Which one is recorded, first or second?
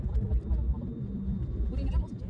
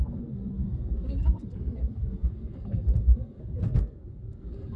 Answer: first